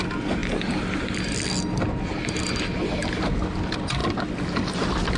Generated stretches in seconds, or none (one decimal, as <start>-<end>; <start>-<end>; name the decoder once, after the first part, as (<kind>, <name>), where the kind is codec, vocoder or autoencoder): none